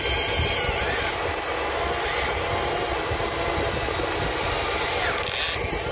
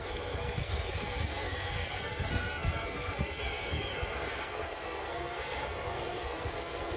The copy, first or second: second